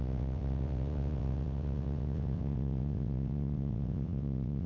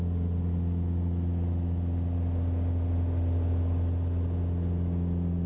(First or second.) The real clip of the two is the second